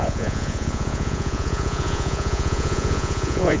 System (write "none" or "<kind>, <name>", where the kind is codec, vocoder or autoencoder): vocoder, Vocos